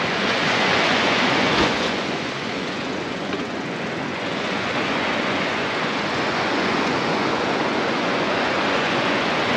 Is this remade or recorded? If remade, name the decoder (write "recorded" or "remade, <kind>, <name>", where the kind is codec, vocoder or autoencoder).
remade, vocoder, Vocos